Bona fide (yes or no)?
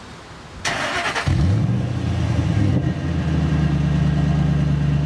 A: yes